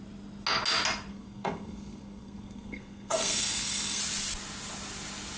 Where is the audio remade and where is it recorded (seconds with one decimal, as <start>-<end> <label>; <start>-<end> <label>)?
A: 0.0-1.1 recorded; 1.1-4.0 remade; 4.0-5.4 recorded